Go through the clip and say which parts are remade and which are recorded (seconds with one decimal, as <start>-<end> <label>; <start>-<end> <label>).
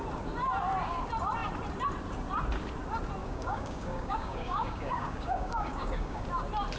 0.0-3.2 recorded; 3.2-6.2 remade; 6.2-6.8 recorded